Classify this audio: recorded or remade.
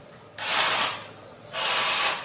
recorded